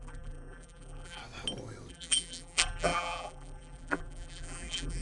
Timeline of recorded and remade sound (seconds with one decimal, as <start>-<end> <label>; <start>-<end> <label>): 0.0-1.2 remade; 1.2-1.9 recorded; 1.9-5.0 remade